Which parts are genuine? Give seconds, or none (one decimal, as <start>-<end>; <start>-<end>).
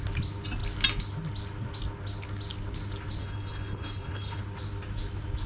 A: 0.0-3.2; 4.4-5.5